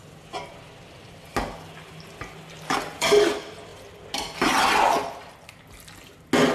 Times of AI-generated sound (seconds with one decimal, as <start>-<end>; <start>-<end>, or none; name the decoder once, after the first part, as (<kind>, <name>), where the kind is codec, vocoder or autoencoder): none